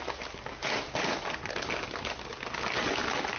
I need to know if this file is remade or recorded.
recorded